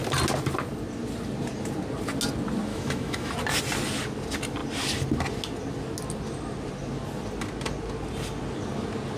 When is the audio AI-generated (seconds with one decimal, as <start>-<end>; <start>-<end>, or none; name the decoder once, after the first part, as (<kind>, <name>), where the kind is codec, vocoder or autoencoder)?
2.7-3.3 (autoencoder, DAC-VAE)

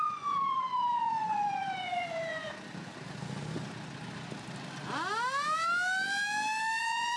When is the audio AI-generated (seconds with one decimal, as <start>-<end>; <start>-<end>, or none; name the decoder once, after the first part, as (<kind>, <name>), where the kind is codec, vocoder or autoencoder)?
0.0-2.5 (vocoder, Vocos); 6.8-7.2

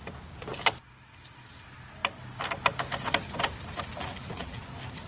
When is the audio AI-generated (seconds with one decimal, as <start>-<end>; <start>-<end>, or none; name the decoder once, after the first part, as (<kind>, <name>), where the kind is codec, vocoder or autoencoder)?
3.9-4.6 (vocoder, BigVGAN v2)

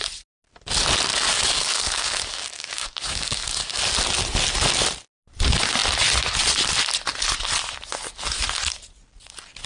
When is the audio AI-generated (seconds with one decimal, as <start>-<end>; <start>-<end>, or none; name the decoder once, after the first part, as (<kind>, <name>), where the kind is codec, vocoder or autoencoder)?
1.1-3.8 (codec, DAC)

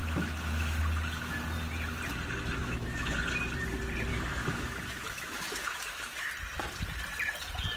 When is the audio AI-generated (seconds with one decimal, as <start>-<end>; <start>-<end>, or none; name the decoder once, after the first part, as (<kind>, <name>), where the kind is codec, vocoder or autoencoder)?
0.0-0.8 (autoencoder, DAC-VAE); 2.6-3.2; 4.1-6.3